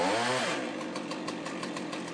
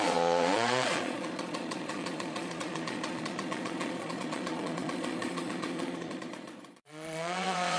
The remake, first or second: second